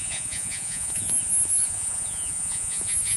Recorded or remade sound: remade